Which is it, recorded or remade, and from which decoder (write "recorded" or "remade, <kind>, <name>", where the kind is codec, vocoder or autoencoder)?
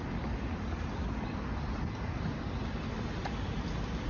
recorded